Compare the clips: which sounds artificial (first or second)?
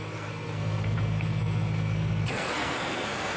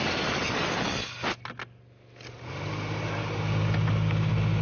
first